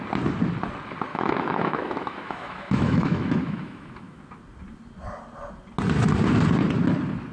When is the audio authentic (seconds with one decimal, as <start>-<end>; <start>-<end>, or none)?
0.0-1.1; 4.2-7.3